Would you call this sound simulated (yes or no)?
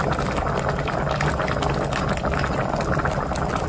no